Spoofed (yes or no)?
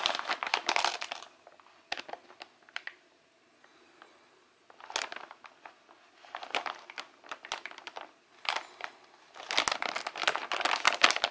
no